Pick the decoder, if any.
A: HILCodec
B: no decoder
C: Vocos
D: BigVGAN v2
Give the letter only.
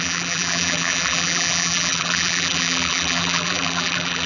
D